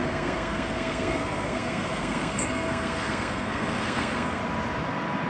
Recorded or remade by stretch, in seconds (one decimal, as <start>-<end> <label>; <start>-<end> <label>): 0.0-4.4 remade; 4.4-5.3 recorded